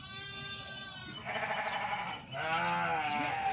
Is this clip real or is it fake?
real